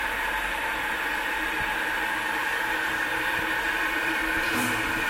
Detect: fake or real fake